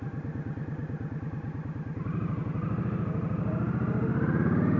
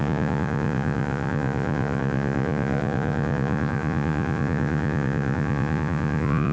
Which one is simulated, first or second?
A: second